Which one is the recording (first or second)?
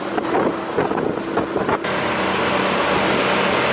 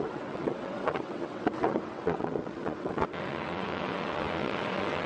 first